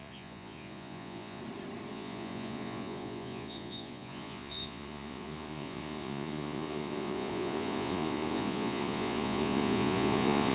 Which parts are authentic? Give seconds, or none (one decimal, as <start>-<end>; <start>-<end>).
1.4-1.9